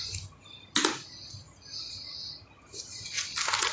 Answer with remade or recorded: recorded